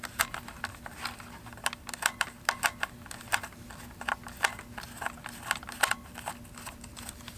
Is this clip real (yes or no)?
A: yes